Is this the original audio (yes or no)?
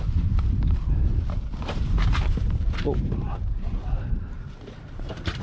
no